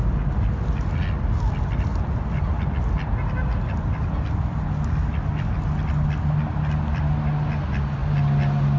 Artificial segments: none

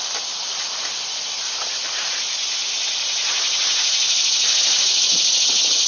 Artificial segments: 0.0-2.6 (vocoder, BigVGAN v2)